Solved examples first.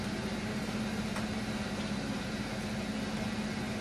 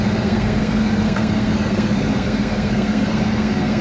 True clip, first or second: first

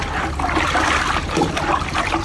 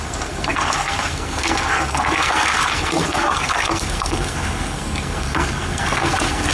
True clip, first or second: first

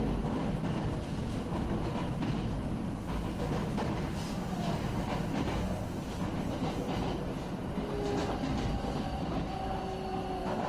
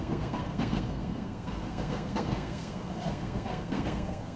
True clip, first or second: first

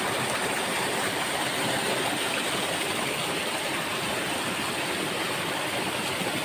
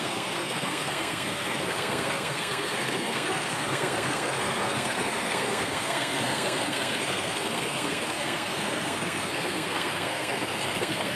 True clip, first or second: first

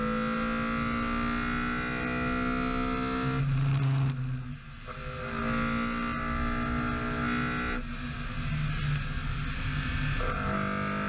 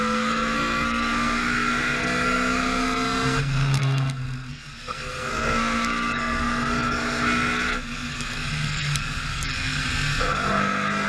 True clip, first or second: first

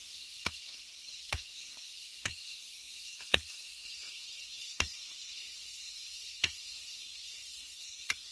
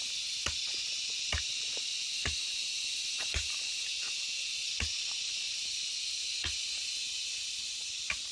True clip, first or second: second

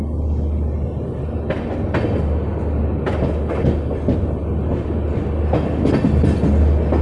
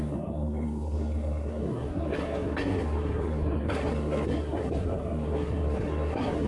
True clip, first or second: first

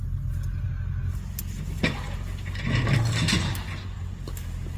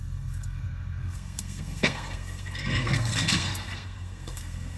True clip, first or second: first